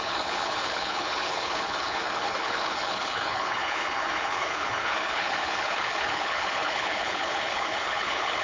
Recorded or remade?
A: remade